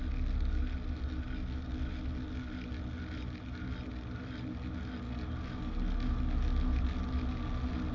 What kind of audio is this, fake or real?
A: real